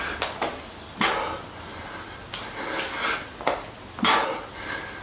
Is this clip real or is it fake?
real